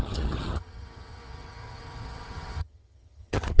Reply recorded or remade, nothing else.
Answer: remade